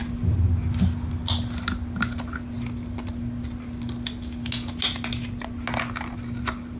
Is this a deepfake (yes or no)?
no